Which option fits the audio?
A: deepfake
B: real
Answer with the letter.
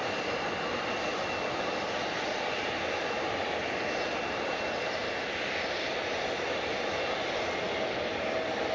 B